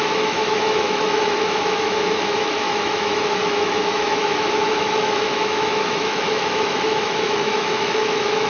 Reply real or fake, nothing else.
fake